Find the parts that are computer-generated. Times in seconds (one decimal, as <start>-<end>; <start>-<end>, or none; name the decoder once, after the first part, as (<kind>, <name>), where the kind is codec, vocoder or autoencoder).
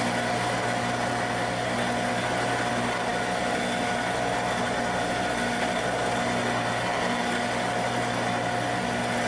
none